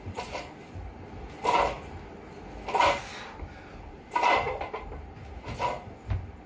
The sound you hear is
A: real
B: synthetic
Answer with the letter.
A